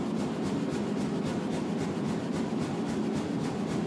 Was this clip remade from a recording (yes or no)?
no